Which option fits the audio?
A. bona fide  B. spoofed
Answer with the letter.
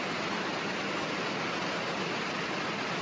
A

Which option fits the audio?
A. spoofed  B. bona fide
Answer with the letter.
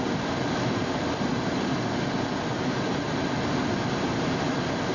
B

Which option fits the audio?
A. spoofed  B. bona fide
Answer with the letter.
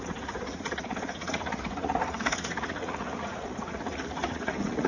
A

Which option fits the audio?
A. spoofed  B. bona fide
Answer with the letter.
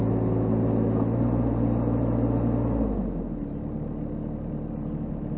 B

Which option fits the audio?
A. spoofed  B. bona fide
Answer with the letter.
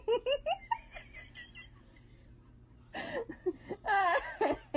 B